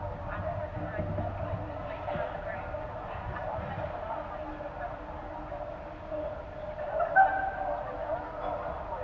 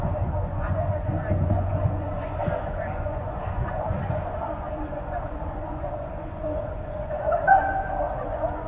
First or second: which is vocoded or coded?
second